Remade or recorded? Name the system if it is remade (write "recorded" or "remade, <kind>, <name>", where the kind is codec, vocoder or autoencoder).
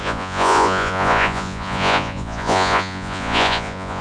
remade, vocoder, Vocos